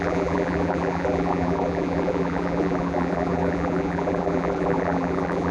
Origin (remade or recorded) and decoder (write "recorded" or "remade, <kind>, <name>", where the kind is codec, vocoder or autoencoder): remade, vocoder, BigVGAN v2